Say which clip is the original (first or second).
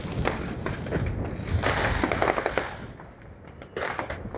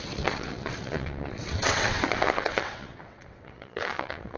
first